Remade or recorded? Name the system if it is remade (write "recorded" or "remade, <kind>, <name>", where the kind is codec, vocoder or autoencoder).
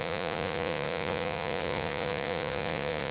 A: remade, vocoder, Vocos